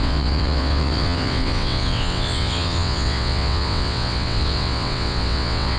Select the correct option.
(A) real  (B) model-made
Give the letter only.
B